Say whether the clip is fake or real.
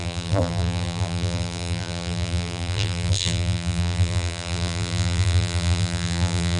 fake